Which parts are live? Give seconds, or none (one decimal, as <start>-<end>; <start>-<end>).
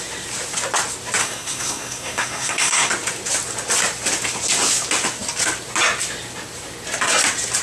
0.0-1.2; 2.9-7.6